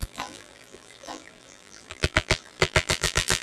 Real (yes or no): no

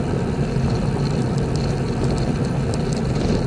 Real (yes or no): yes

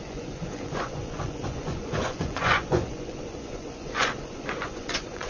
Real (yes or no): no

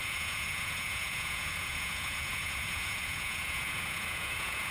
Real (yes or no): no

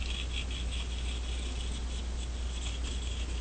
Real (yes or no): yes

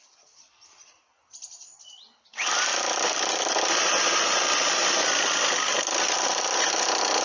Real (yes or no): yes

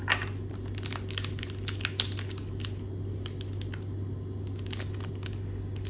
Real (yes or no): yes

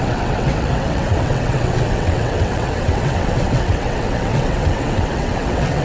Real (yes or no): no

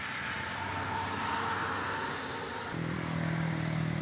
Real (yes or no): yes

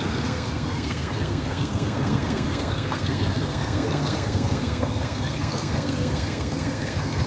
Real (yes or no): no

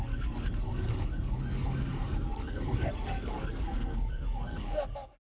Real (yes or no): no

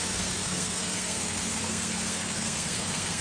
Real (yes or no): no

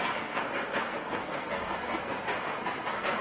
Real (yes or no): no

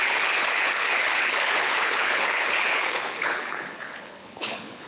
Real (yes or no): no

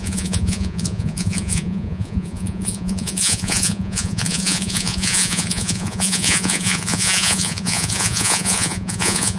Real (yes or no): no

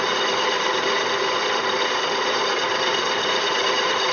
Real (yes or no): yes